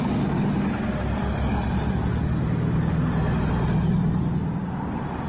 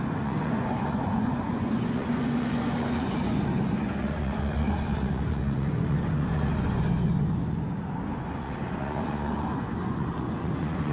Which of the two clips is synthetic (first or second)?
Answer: second